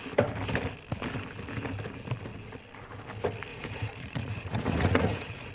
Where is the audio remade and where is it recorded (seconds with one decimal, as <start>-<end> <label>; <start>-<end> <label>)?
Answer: 0.0-3.5 recorded; 3.5-5.5 remade